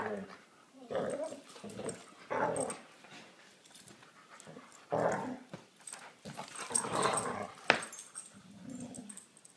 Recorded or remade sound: recorded